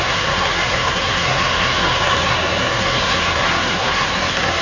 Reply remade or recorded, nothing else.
remade